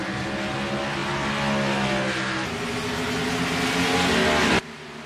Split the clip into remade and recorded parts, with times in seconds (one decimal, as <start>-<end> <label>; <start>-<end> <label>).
0.0-5.1 recorded